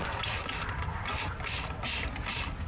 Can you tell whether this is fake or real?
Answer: real